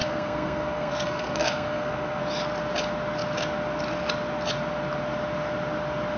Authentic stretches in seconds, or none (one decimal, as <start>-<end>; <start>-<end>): 2.2-6.2